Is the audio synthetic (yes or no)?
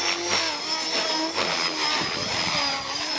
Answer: no